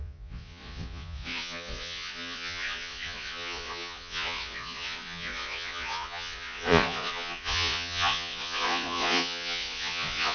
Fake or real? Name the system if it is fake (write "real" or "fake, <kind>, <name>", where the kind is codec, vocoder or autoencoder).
fake, vocoder, Vocos